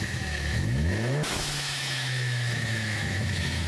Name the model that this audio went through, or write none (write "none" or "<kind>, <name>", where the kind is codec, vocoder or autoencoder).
autoencoder, DAC-VAE